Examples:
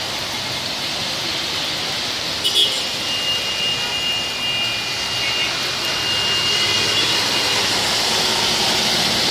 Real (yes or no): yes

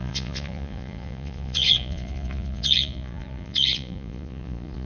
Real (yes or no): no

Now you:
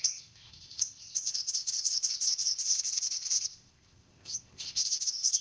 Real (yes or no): no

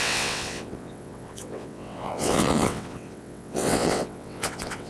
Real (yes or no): no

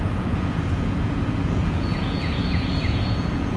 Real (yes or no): no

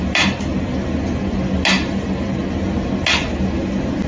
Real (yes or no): yes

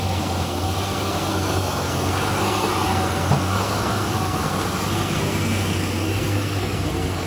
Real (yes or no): no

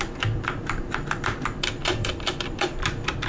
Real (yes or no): no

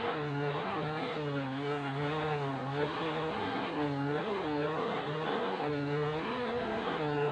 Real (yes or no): no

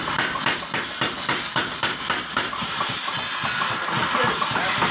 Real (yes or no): yes